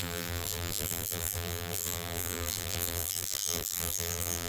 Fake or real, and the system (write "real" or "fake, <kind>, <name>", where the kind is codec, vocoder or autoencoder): fake, vocoder, BigVGAN v2